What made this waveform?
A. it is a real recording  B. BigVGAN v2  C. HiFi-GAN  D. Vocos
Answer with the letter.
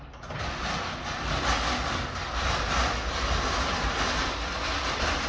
A